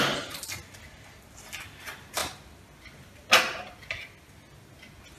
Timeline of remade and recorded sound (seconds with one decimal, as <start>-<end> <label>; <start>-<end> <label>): 0.0-5.2 recorded